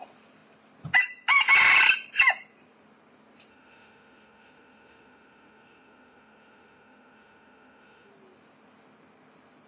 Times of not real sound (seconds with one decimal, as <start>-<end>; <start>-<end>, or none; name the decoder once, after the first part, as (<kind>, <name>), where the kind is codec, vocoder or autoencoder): 3.5-8.1 (autoencoder, DAC-VAE)